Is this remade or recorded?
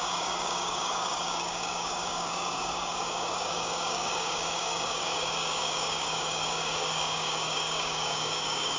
remade